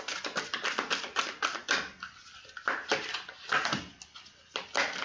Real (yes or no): no